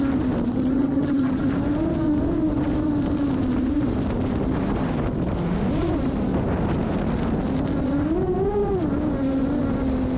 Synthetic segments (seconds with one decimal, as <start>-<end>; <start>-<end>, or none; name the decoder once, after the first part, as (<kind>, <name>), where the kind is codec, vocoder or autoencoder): 0.5-1.4 (vocoder, HiFi-GAN)